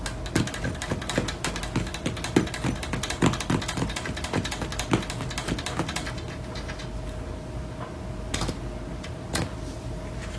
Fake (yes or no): no